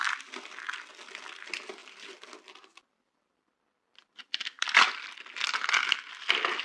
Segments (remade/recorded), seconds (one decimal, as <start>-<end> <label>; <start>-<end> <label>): 0.0-1.8 recorded; 1.8-5.0 remade; 5.0-6.6 recorded